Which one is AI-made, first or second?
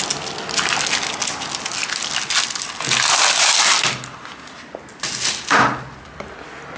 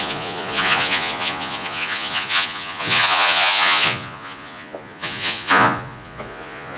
second